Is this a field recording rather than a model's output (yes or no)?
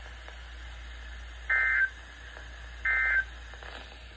yes